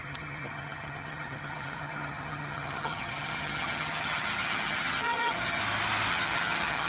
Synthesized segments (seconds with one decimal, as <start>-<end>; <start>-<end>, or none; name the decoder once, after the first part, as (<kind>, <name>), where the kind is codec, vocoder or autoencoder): 0.0-5.6 (vocoder, HiFi-GAN); 6.1-6.9